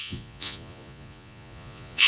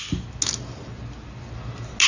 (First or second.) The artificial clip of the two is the first